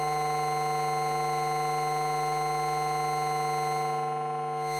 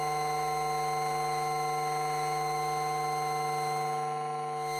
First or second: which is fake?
second